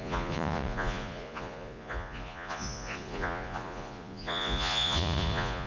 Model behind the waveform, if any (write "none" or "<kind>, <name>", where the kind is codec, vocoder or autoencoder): vocoder, Vocos